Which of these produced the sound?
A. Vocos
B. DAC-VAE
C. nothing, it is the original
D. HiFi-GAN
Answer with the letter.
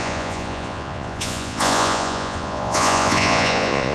A